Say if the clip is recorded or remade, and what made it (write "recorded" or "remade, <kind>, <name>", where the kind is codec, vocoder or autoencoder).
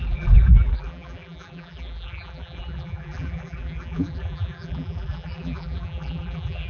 remade, vocoder, BigVGAN v2